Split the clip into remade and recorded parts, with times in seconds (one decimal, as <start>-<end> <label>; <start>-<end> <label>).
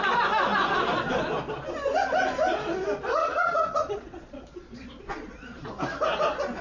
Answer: 0.0-3.2 recorded; 3.2-5.7 remade; 5.7-6.6 recorded